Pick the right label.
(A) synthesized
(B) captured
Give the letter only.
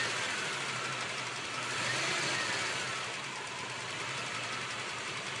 A